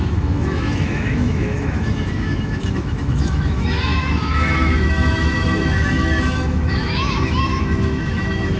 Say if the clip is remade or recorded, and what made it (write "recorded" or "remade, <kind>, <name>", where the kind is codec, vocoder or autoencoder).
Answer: remade, autoencoder, DAC-VAE